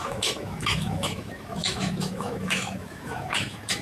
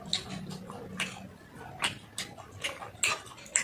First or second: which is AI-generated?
first